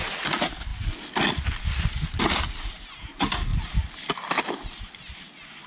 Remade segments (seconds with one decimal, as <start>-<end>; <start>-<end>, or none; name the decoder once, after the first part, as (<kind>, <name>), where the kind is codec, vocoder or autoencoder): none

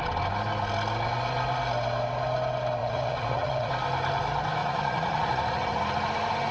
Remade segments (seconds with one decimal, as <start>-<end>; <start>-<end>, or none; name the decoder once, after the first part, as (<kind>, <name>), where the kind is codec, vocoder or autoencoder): 2.8-3.7 (vocoder, Vocos); 4.6-5.8

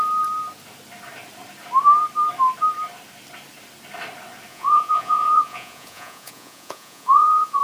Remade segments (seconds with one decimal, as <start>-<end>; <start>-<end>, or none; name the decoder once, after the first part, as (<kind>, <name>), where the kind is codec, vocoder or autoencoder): 4.5-7.6 (vocoder, Vocos)

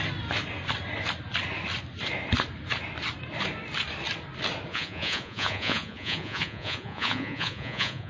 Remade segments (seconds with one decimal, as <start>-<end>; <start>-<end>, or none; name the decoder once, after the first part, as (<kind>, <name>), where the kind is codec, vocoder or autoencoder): 4.7-8.1 (vocoder, Vocos)